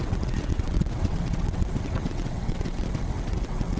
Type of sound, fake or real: fake